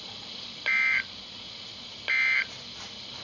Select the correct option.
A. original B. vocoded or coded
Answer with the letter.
A